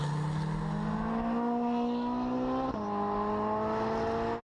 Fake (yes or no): no